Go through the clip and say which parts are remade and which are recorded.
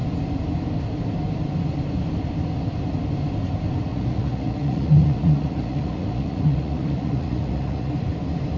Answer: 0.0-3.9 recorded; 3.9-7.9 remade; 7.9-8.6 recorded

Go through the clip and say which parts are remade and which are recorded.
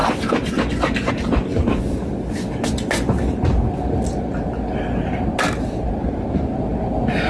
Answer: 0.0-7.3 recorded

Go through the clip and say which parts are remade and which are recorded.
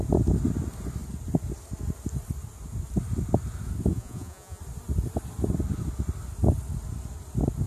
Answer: 0.0-3.9 recorded; 3.9-4.6 remade; 4.6-7.7 recorded